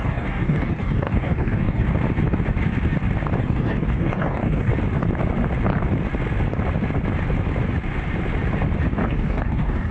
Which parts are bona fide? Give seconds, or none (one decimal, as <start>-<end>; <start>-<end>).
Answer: 1.8-3.4; 4.7-9.1